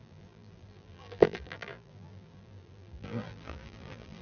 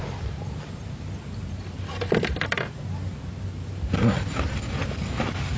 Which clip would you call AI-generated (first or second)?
first